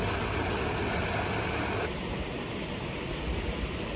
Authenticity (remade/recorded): recorded